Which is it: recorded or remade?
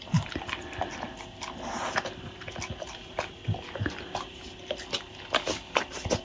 recorded